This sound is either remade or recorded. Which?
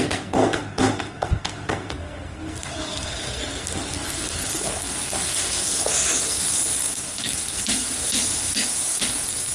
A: remade